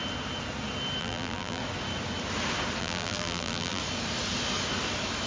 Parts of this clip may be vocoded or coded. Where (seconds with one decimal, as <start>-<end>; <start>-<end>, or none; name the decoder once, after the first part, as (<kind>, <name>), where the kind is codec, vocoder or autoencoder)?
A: 1.0-1.6 (vocoder, BigVGAN v2); 2.8-3.8